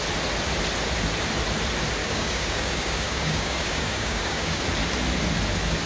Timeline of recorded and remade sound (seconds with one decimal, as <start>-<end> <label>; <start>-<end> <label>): 0.0-2.0 recorded; 2.0-4.6 remade; 4.6-5.9 recorded